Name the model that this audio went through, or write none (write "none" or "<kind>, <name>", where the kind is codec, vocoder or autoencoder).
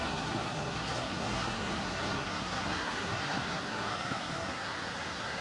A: codec, SNAC